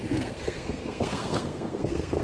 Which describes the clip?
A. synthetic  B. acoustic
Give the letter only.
A